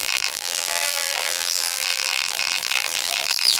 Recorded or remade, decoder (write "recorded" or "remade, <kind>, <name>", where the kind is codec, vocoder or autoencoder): remade, vocoder, BigVGAN v2